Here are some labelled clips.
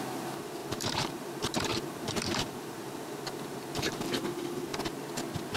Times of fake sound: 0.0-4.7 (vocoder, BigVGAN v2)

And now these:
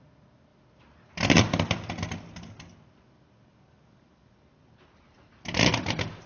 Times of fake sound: 0.5-4.3 (vocoder, BigVGAN v2)

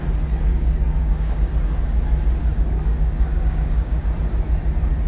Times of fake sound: 0.5-1.5 (codec, DAC); 2.4-4.0

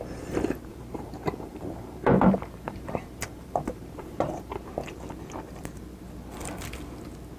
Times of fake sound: 0.7-4.7 (vocoder, BigVGAN v2)

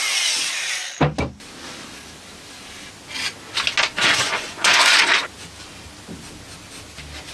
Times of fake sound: 3.9-5.0 (vocoder, Vocos)

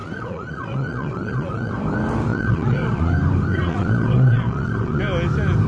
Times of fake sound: 0.0-1.7 (vocoder, Vocos); 2.3-3.1; 3.5-5.0

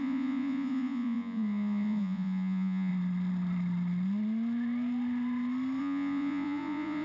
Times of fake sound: 0.0-2.9 (vocoder, Vocos); 5.8-7.0

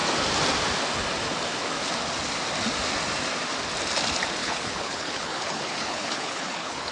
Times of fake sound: 4.4-6.9 (codec, HILCodec)